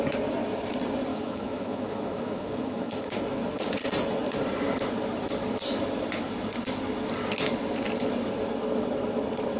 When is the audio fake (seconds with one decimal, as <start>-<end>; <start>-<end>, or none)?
1.1-3.2